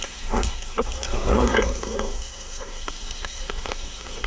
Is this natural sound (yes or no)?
no